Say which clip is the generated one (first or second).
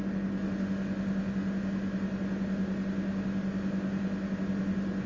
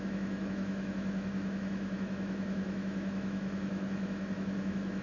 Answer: second